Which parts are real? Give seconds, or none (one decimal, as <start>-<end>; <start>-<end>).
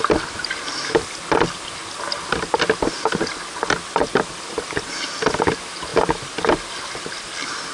0.0-7.7